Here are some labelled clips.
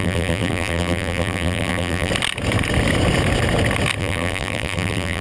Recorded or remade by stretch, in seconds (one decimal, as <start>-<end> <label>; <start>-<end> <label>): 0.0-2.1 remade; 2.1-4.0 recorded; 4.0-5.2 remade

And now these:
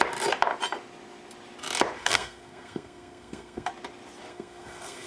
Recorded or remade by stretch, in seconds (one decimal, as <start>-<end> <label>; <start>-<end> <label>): 0.0-2.0 recorded; 2.0-3.7 remade; 3.7-4.3 recorded; 4.3-5.1 remade

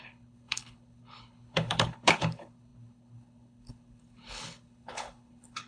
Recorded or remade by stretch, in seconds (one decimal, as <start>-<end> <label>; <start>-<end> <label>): 0.0-5.7 remade

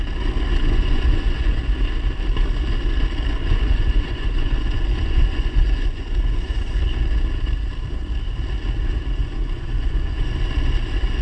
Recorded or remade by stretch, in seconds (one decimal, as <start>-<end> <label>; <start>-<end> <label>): 0.0-0.6 recorded; 0.6-1.6 remade; 1.6-3.3 recorded; 3.3-6.8 remade; 6.8-9.2 recorded; 9.2-10.3 remade; 10.3-11.2 recorded

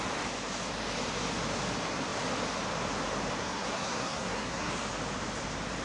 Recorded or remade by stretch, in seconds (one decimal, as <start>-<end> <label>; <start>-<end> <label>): 0.0-3.4 recorded; 3.4-4.7 remade; 4.7-5.8 recorded

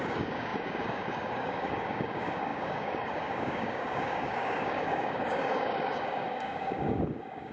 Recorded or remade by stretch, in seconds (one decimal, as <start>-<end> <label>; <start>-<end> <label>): 0.0-7.5 remade

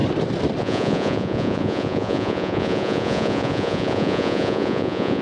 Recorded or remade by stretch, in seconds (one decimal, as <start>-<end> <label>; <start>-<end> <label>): 0.0-0.6 recorded; 0.6-5.2 remade

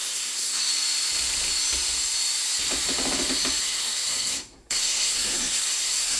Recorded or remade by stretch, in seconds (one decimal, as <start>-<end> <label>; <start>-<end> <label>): 0.0-0.7 remade; 0.7-3.6 recorded; 3.6-6.2 remade